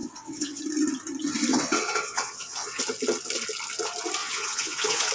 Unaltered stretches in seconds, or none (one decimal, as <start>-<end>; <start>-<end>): 0.6-1.5; 2.8-4.2